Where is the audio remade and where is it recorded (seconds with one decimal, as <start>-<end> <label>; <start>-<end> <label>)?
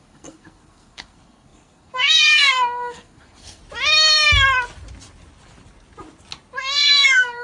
0.0-3.6 remade; 3.6-6.6 recorded; 6.6-7.4 remade